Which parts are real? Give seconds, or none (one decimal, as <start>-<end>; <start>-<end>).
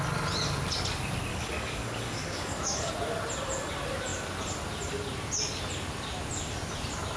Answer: 0.0-1.3; 2.9-7.2